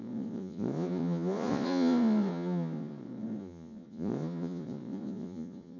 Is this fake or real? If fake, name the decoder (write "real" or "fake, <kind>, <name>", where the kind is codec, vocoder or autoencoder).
fake, vocoder, Vocos